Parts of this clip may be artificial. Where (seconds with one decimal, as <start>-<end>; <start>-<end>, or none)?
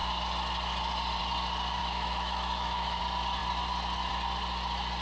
1.8-3.0